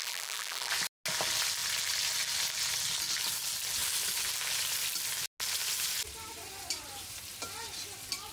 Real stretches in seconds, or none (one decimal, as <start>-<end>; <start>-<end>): 0.7-8.3